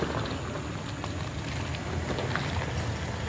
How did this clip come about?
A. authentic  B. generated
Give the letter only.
A